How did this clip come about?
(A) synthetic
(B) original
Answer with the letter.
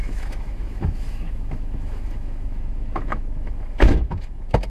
A